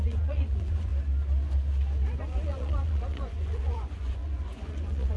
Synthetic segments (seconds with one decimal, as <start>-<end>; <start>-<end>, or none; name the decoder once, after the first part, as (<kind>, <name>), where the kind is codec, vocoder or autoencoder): 0.0-0.9 (vocoder, Vocos); 2.2-5.2